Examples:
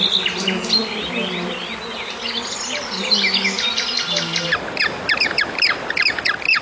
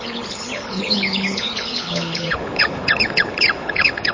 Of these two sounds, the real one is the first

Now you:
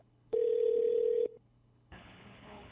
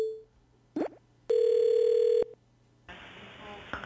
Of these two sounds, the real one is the second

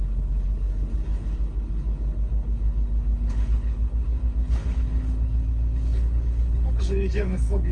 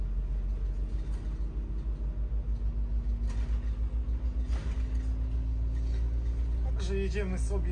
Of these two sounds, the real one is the second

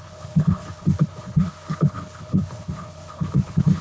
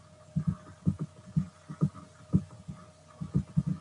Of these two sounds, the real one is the second